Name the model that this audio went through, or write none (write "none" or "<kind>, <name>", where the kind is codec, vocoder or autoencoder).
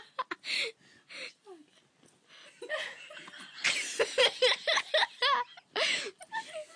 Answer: none